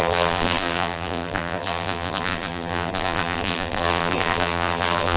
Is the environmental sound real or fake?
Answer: fake